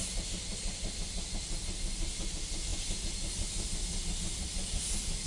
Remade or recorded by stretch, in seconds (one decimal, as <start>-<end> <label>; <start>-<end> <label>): 0.0-5.3 recorded